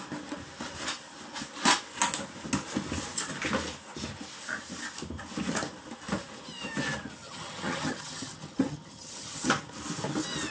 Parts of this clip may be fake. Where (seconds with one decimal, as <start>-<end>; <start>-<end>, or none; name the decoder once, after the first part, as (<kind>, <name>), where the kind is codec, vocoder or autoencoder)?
7.2-9.5 (vocoder, HiFi-GAN)